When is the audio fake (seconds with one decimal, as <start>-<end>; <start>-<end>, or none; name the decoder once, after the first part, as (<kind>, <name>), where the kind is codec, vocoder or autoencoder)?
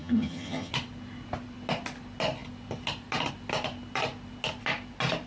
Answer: 0.0-0.7 (vocoder, HiFi-GAN)